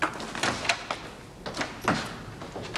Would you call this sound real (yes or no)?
yes